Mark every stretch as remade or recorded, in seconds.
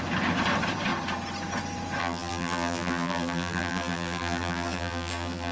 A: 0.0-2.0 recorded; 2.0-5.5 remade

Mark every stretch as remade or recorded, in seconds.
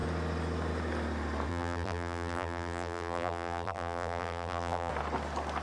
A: 0.0-1.5 recorded; 1.5-4.9 remade; 4.9-5.6 recorded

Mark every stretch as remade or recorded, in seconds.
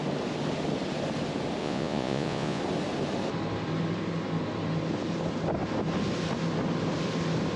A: 0.0-1.6 recorded; 1.6-2.6 remade; 2.6-7.6 recorded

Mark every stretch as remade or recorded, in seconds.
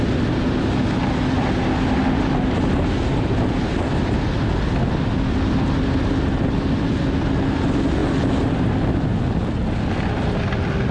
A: 0.0-10.9 recorded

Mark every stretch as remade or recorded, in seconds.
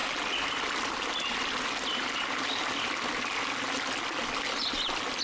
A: 0.0-5.2 recorded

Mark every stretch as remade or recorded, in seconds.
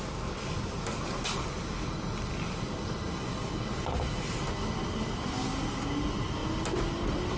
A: 0.0-7.4 recorded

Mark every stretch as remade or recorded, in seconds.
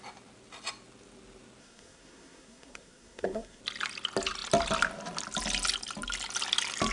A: 0.0-1.6 recorded; 1.6-3.6 remade; 3.6-6.9 recorded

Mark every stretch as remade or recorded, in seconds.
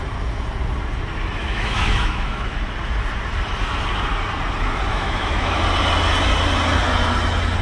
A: 0.0-1.4 recorded; 1.4-2.6 remade; 2.6-4.9 recorded; 4.9-5.6 remade; 5.6-7.6 recorded